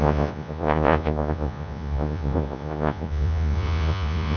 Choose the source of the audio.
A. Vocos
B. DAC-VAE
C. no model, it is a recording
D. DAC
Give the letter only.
A